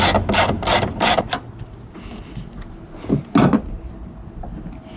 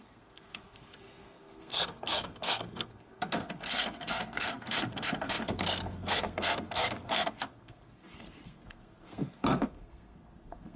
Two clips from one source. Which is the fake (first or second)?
second